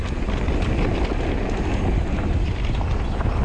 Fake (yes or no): no